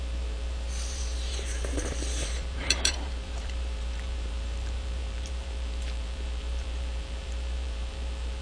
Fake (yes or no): yes